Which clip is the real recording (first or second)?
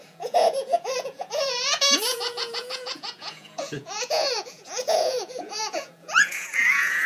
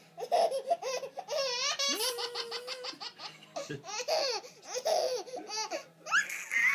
second